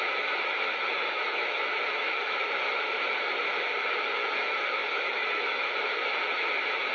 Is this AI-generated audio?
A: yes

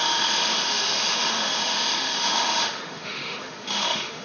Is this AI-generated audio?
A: yes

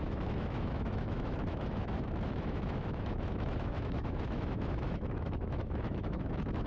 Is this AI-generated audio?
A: yes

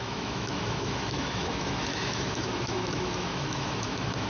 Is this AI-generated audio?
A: yes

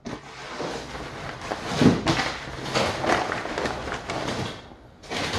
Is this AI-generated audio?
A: no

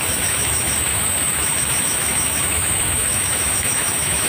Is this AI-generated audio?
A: yes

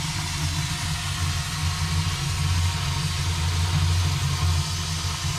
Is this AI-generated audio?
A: no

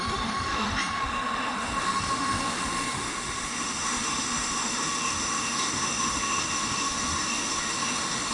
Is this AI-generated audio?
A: yes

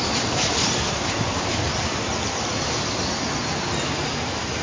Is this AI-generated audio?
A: no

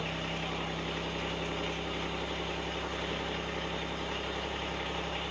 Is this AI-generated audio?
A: no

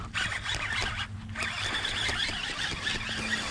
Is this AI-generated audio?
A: no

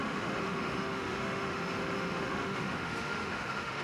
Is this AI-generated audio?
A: yes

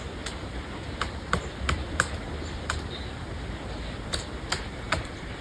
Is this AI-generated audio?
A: no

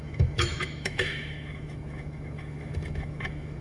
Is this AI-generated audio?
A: yes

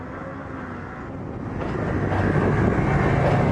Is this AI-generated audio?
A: no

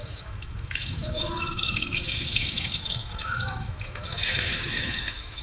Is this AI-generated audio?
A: yes